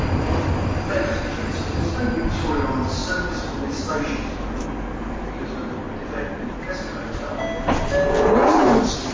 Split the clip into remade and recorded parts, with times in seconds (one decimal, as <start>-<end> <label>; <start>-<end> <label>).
0.0-9.1 recorded